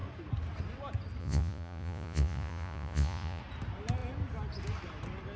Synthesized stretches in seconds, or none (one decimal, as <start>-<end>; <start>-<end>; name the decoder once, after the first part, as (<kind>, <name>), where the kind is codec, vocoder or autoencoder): 1.2-3.4 (vocoder, Vocos)

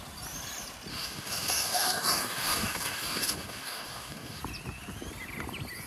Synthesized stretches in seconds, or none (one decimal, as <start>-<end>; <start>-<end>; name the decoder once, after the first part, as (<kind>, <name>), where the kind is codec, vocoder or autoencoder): 0.9-4.4 (codec, DAC)